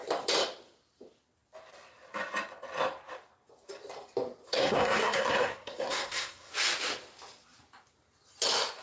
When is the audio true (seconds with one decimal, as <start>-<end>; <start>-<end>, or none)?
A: 0.0-4.5; 6.5-8.8